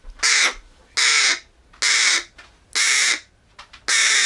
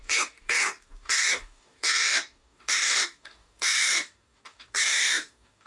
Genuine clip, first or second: first